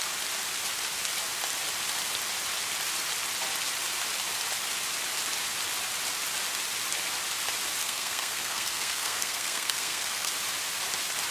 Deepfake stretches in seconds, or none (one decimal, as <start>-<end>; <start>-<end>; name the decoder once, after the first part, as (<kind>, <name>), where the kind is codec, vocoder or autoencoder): 7.8-10.3 (codec, SNAC)